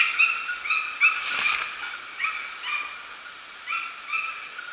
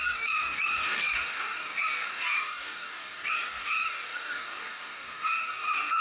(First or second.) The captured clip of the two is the first